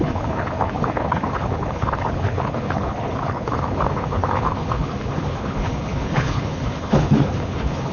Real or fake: fake